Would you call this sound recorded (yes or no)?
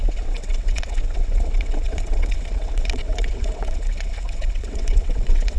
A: no